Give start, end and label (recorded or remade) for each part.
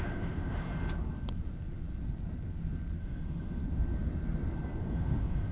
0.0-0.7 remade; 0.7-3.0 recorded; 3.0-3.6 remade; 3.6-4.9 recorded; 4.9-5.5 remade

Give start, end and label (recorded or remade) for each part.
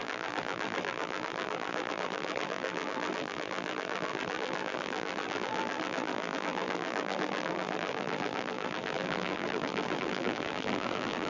0.0-11.3 remade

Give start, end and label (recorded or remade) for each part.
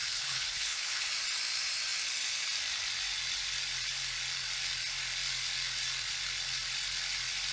0.0-1.1 remade; 1.1-7.5 recorded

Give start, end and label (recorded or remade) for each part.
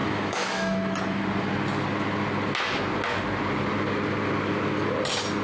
0.0-1.2 remade; 1.2-5.4 recorded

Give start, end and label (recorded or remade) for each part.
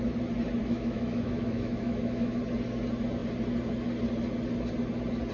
0.0-0.6 recorded; 0.6-2.4 remade; 2.4-5.3 recorded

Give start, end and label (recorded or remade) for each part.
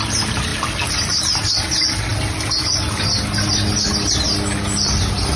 0.0-5.4 recorded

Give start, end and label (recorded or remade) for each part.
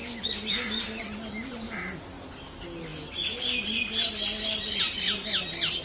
0.0-1.0 remade; 1.0-5.8 recorded